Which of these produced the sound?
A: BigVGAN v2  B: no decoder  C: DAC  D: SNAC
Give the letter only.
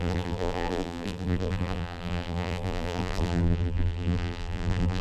A